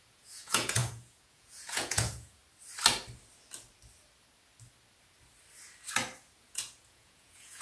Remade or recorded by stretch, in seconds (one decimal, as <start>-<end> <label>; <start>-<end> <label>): 0.0-2.4 remade; 2.4-6.4 recorded; 6.4-7.6 remade